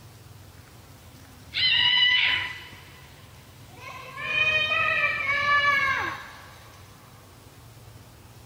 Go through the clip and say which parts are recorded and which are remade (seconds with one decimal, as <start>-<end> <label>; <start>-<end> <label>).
0.0-1.0 recorded; 1.0-5.8 remade; 5.8-8.5 recorded